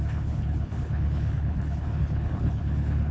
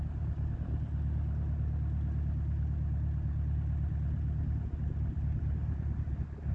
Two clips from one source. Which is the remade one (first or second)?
first